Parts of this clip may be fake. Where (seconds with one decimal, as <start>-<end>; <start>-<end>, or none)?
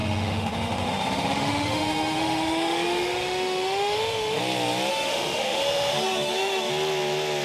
0.0-4.4; 4.9-6.7